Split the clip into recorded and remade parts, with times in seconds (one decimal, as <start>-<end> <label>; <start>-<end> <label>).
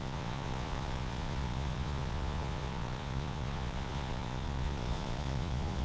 0.0-5.8 remade